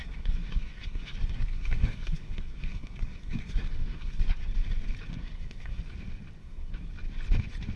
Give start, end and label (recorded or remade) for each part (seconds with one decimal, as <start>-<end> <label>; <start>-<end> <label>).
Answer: 0.0-4.5 remade; 4.5-5.1 recorded; 5.1-5.8 remade; 5.8-6.4 recorded; 6.4-6.9 remade; 6.9-7.8 recorded